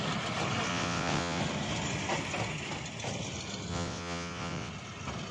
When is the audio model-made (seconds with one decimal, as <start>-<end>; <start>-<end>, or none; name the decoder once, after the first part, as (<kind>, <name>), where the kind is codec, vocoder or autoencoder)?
0.7-1.4 (vocoder, WaveNeXt); 3.7-4.7